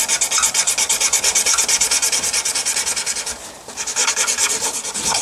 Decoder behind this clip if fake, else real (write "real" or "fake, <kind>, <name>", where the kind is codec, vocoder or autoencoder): real